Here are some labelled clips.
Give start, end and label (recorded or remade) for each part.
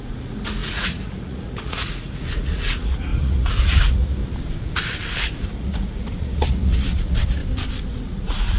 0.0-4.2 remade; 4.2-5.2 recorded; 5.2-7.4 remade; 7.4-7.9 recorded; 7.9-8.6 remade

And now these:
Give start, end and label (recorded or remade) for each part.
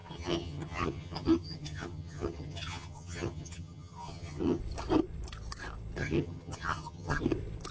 0.0-4.6 remade; 4.6-6.0 recorded; 6.0-7.2 remade; 7.2-7.7 recorded